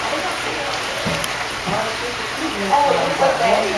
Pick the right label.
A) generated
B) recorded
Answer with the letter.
B